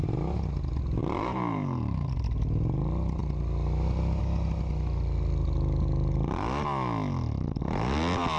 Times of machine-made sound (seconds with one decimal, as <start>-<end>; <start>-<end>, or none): 1.0-2.1